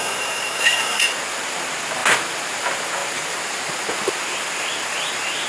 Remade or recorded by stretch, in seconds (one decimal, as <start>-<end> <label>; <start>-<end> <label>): 0.0-1.0 remade; 1.0-5.5 recorded